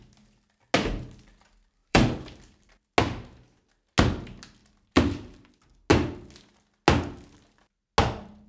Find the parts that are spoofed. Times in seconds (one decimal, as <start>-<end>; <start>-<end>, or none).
1.8-2.9; 4.6-5.5